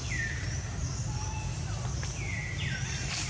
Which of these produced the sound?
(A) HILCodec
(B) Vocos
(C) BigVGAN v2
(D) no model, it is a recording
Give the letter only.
D